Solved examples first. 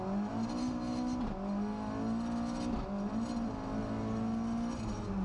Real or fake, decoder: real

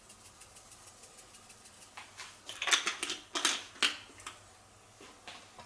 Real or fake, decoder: real